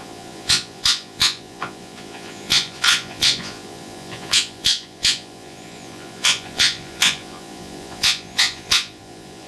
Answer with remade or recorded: remade